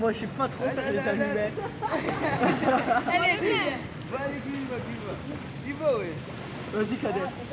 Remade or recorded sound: recorded